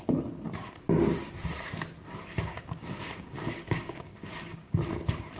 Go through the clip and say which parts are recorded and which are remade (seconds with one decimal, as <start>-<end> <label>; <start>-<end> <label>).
0.0-2.5 recorded; 2.5-4.7 remade; 4.7-5.4 recorded